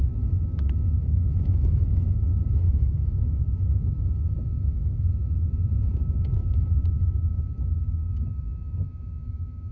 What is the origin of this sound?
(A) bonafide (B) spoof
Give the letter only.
B